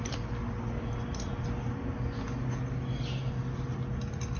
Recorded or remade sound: recorded